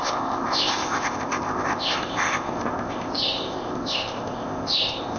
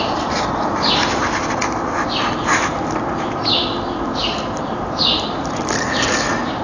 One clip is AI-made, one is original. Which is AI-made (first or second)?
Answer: first